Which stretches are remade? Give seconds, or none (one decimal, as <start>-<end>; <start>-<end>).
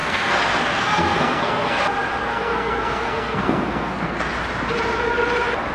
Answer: 0.0-1.8; 2.2-4.3